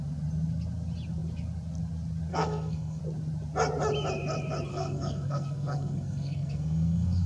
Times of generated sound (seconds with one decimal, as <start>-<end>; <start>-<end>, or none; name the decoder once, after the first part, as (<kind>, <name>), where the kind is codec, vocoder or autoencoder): 2.3-3.0 (codec, SNAC); 4.7-7.3